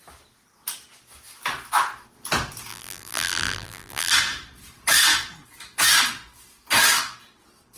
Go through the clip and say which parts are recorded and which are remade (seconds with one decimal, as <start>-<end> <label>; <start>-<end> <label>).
0.0-2.7 recorded; 2.7-4.1 remade; 4.1-7.8 recorded